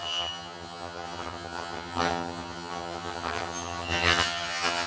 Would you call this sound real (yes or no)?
no